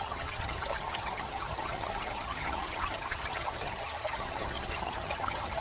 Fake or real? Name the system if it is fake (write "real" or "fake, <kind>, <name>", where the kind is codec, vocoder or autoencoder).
fake, vocoder, HiFi-GAN